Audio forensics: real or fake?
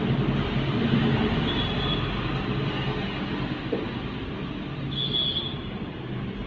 real